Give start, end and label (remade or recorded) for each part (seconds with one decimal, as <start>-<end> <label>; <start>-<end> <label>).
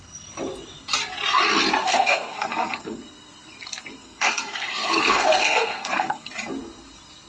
0.0-1.8 recorded; 1.8-3.0 remade; 3.0-4.0 recorded; 4.0-6.3 remade; 6.3-7.3 recorded